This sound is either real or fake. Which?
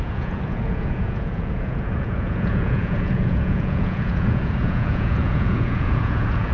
fake